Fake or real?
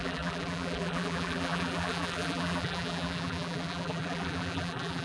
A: fake